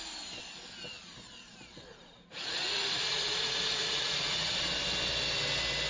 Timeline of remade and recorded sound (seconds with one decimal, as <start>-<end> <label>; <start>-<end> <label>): 0.0-1.9 recorded; 1.9-4.6 remade; 4.6-5.9 recorded